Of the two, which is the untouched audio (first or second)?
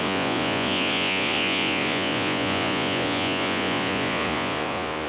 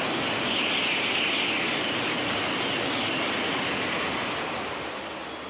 second